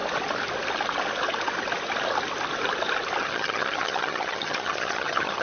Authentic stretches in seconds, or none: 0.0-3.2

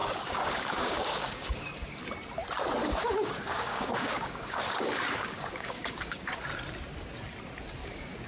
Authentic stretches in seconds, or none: 2.0-2.8; 6.4-7.8

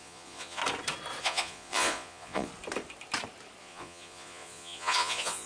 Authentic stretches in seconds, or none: 0.6-1.2; 2.5-3.6

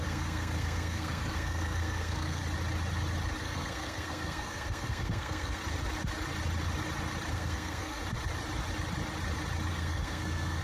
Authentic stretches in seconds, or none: 2.4-3.4; 5.6-7.3; 8.0-9.7

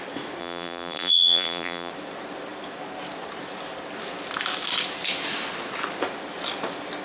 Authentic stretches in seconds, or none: 0.0-0.4; 1.9-7.0

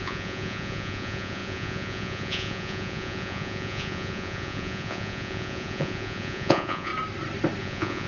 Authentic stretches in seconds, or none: 6.9-7.6

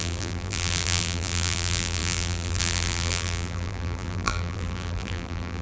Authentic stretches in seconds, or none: none

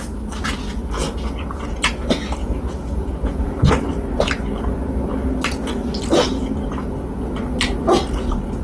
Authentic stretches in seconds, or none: 0.0-2.4; 3.7-8.6